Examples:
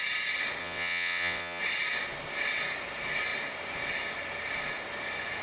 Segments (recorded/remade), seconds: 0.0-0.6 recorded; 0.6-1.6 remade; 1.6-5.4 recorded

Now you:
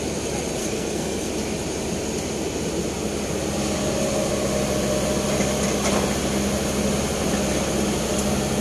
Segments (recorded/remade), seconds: 0.0-0.6 recorded; 0.6-1.3 remade; 1.3-8.6 recorded

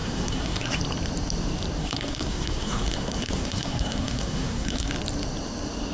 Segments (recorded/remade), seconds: 0.0-0.8 remade; 0.8-1.8 recorded; 1.8-4.9 remade; 4.9-5.9 recorded